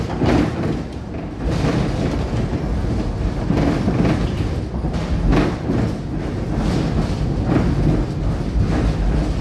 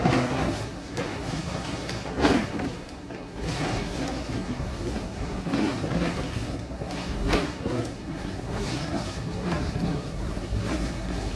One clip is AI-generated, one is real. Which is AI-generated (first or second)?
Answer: second